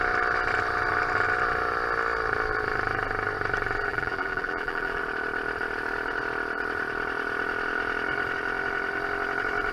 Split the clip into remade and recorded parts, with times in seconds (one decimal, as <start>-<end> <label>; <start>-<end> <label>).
0.0-3.9 recorded; 3.9-5.0 remade; 5.0-9.7 recorded